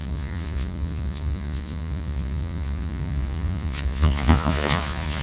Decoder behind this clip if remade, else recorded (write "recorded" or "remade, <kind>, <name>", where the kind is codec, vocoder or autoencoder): remade, vocoder, Vocos